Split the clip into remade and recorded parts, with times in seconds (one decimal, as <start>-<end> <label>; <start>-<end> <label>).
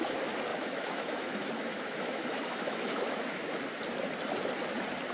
0.0-0.5 recorded; 0.5-3.6 remade; 3.6-5.1 recorded